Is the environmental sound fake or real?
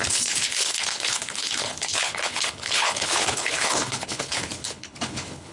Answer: fake